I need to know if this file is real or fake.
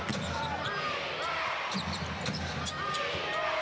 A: real